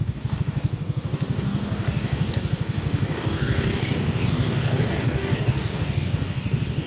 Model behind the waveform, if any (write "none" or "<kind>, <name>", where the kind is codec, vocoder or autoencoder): codec, DAC